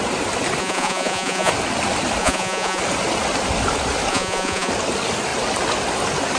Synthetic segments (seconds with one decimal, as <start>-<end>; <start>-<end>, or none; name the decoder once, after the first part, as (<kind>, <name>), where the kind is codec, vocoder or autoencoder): 0.6-1.5 (vocoder, Vocos); 2.2-2.8; 4.1-4.7